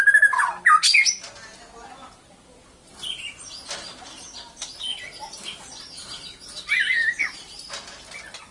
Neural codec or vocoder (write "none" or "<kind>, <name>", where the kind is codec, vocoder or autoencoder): none